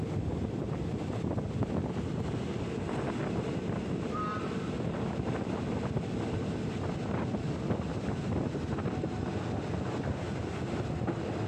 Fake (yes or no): no